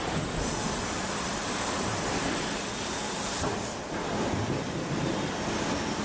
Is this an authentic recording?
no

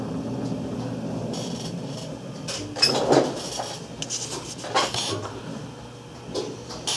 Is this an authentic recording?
yes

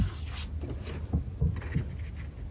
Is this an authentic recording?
yes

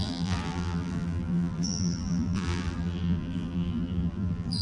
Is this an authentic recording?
no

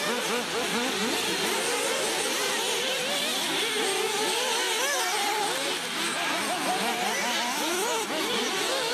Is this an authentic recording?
yes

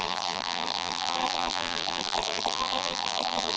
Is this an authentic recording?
no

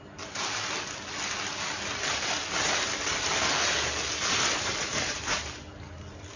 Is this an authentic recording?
yes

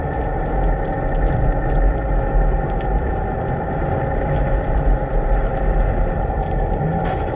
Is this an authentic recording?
yes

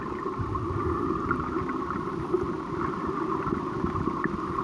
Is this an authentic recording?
yes